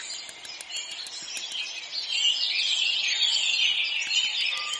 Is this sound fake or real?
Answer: real